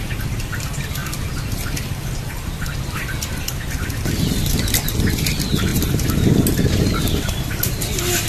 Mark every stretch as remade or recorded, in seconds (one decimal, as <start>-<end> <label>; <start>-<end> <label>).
0.0-8.3 recorded